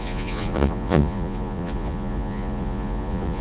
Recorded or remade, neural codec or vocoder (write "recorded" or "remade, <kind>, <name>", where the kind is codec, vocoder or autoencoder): remade, vocoder, Vocos